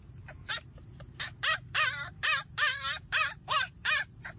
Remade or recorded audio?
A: remade